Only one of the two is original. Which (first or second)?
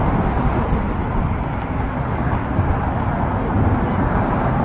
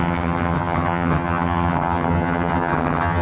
first